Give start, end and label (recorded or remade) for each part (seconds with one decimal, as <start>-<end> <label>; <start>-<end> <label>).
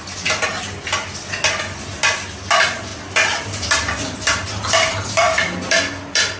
0.0-6.4 recorded